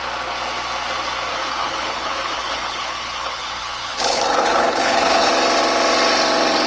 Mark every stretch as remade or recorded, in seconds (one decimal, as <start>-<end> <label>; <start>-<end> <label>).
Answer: 0.0-1.3 recorded; 1.3-5.3 remade; 5.3-6.7 recorded